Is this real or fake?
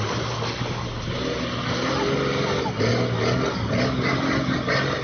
real